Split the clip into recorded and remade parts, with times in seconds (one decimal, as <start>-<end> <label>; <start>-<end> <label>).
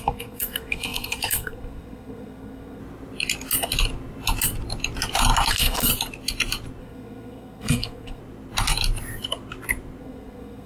0.0-2.8 remade; 2.8-5.5 recorded; 5.5-5.9 remade; 5.9-6.8 recorded; 6.8-8.2 remade; 8.2-10.0 recorded; 10.0-10.7 remade